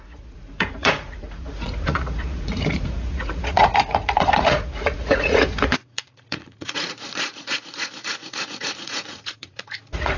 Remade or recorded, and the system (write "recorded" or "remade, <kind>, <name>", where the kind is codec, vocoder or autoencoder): remade, vocoder, Vocos